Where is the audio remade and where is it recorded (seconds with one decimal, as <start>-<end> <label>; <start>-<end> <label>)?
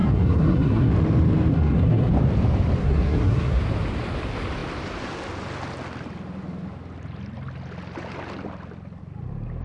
0.0-0.9 remade; 0.9-1.5 recorded; 1.5-2.1 remade; 2.1-2.8 recorded; 2.8-3.6 remade; 3.6-9.6 recorded